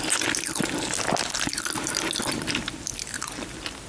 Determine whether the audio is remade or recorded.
recorded